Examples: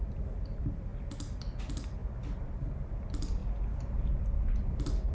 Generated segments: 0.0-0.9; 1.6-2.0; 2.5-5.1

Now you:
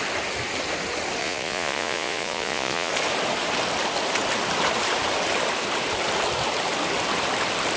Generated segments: 1.2-2.9

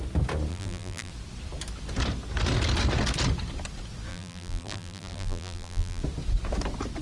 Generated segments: 0.5-1.1; 4.1-6.0

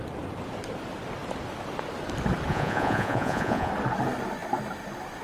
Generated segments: 2.5-3.7

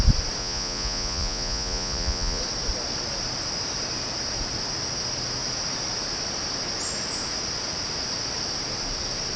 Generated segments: 0.4-2.4